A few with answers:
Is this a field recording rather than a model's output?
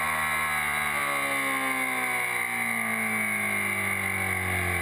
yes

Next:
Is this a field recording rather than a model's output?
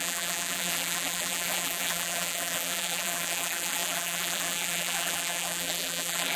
no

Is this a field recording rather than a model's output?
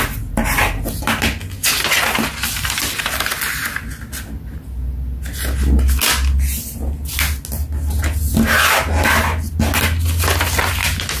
yes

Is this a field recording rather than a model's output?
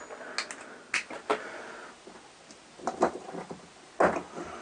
yes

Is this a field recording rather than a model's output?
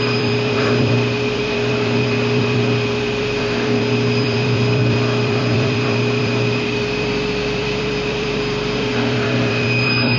no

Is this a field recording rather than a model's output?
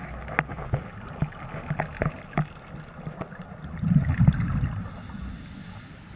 yes